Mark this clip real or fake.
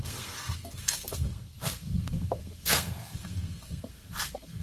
fake